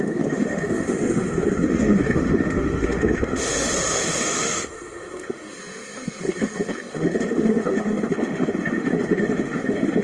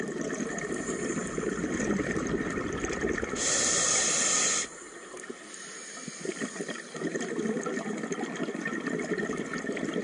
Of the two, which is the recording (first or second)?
second